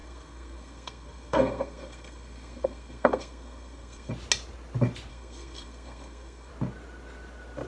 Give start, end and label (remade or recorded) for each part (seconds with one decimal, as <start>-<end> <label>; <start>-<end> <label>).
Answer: 0.0-4.1 remade; 4.1-5.1 recorded; 5.1-6.5 remade; 6.5-7.7 recorded